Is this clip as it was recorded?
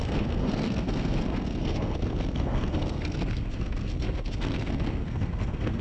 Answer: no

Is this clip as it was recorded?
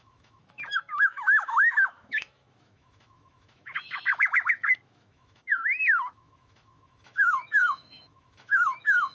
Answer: no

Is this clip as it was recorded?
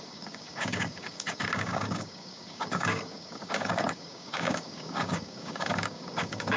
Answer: no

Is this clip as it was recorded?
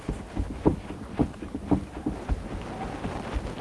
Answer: yes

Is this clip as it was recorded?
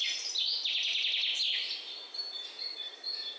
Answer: yes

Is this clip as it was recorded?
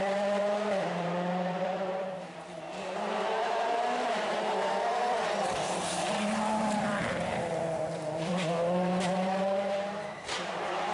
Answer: no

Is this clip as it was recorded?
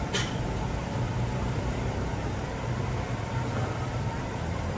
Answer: no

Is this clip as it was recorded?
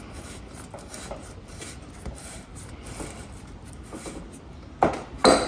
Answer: yes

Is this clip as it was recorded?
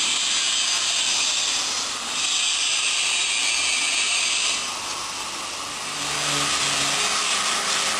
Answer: yes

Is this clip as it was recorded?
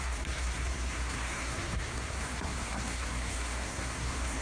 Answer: no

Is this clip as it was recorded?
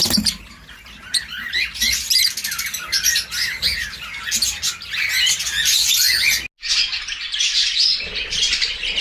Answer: yes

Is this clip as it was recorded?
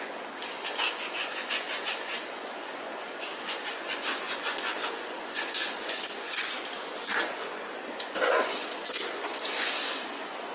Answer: no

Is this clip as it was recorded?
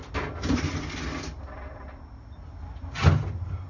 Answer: yes